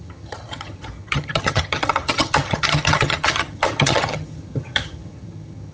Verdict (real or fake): fake